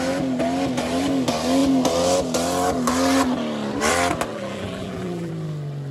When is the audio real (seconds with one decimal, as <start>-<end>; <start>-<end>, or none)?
0.0-4.3; 5.3-5.9